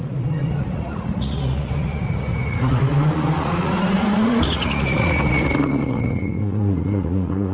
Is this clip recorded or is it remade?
remade